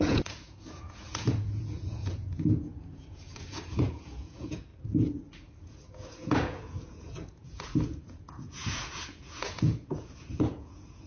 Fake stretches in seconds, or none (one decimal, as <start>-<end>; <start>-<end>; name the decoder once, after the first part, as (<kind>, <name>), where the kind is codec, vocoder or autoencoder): 0.0-4.7 (vocoder, Vocos); 5.6-11.1